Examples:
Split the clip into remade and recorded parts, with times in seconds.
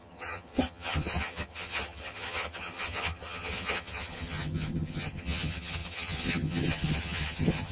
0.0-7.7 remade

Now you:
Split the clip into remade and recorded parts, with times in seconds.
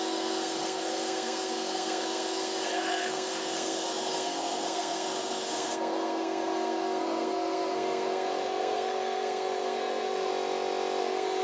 0.0-10.3 remade; 10.3-11.0 recorded; 11.0-11.4 remade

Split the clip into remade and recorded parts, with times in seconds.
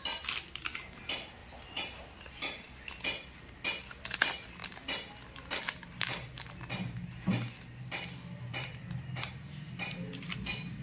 0.0-10.8 recorded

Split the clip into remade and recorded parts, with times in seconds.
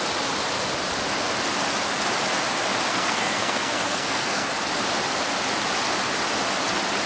0.0-2.9 recorded; 2.9-4.5 remade; 4.5-7.1 recorded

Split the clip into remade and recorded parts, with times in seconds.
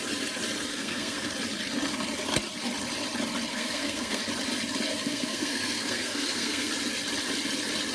0.0-0.7 recorded; 0.7-1.3 remade; 1.3-3.5 recorded; 3.5-4.2 remade; 4.2-4.9 recorded; 4.9-6.7 remade; 6.7-7.9 recorded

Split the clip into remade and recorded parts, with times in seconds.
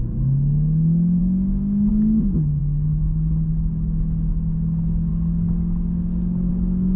0.0-1.2 recorded; 1.2-1.9 remade; 1.9-2.6 recorded; 2.6-3.5 remade; 3.5-5.1 recorded; 5.1-6.5 remade; 6.5-7.0 recorded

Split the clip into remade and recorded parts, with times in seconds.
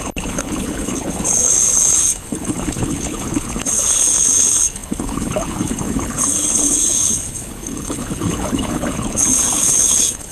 0.0-10.3 remade